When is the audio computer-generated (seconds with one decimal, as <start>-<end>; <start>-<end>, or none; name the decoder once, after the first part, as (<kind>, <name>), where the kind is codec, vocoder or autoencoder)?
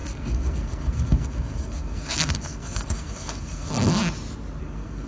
0.0-4.0 (codec, SNAC); 4.6-5.1